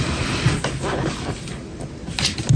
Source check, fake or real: real